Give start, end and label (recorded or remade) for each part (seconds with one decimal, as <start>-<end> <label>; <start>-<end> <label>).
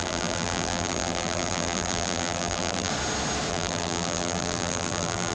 0.0-2.9 remade; 2.9-3.5 recorded; 3.5-5.3 remade